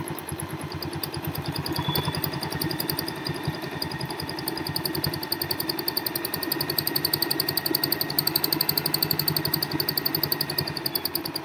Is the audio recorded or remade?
remade